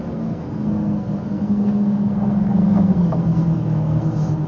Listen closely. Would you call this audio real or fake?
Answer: fake